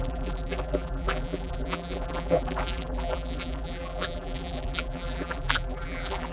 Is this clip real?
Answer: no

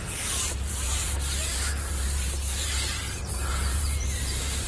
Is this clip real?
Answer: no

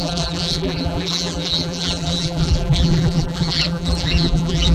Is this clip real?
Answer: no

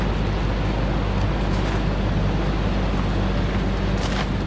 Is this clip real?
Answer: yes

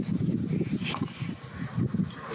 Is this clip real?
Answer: yes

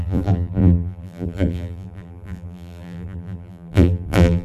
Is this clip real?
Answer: no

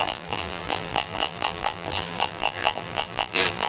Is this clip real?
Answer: no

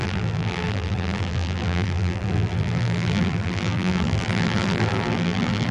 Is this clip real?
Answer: no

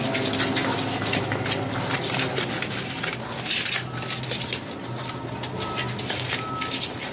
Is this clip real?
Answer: yes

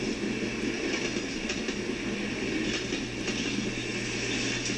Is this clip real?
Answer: yes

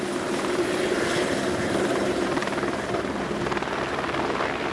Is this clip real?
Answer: no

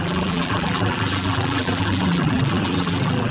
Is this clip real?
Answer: no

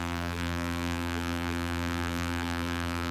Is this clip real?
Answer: no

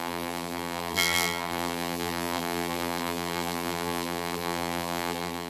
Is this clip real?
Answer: no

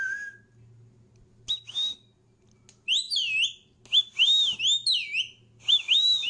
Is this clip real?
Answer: yes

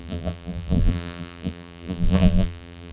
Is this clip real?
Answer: no